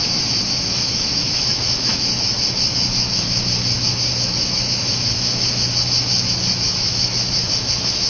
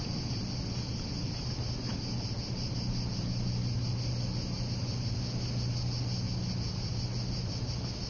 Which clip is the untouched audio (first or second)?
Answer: second